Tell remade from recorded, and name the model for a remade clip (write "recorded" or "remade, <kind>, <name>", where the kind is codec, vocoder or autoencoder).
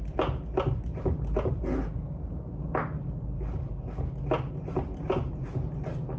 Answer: recorded